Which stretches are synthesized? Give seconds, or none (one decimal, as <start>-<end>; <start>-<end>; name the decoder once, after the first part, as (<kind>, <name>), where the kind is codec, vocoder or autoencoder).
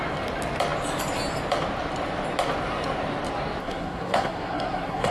3.6-5.1 (codec, SNAC)